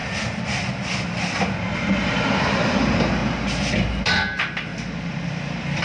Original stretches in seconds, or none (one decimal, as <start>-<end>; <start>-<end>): 0.0-2.0; 3.2-3.9; 4.7-5.8